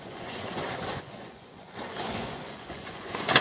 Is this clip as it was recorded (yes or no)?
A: no